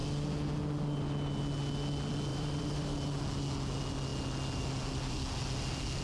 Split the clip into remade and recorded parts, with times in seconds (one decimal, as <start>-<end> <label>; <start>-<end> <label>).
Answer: 0.0-2.3 recorded; 2.3-3.2 remade; 3.2-6.0 recorded